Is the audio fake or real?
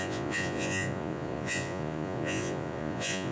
fake